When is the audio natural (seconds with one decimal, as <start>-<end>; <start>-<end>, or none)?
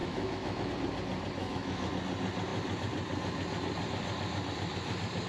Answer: 0.7-1.4; 1.9-5.3